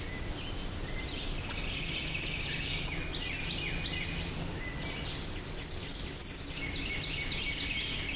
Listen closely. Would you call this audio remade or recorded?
recorded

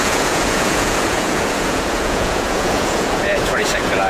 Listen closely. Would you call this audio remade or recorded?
remade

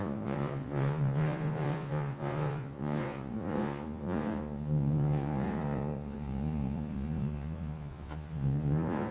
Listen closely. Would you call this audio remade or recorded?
remade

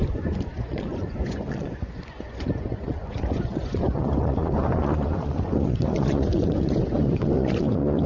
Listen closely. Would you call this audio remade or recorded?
remade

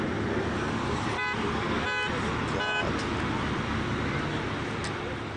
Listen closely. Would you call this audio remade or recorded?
recorded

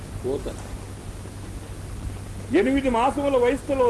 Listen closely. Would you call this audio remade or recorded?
recorded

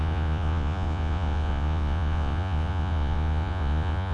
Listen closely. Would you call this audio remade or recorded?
remade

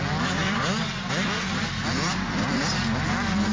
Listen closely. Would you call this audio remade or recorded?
recorded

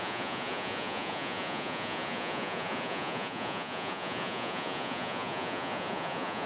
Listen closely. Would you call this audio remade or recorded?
remade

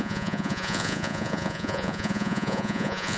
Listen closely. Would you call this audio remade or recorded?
remade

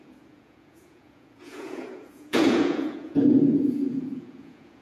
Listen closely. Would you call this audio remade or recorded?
remade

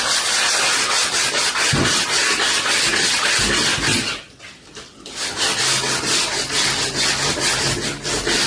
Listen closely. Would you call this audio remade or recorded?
recorded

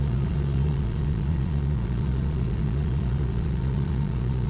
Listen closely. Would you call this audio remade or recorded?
remade